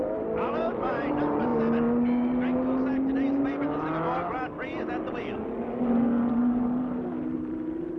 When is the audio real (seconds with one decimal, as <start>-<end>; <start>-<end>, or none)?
1.5-6.3